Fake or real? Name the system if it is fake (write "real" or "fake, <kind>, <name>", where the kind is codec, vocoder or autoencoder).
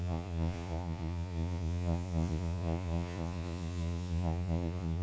fake, vocoder, Vocos